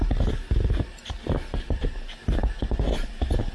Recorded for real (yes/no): yes